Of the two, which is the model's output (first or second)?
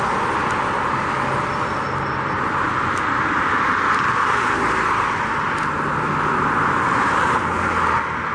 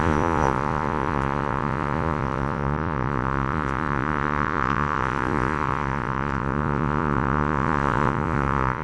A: second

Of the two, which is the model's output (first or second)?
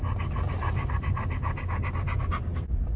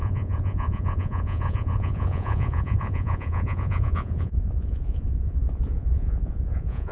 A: second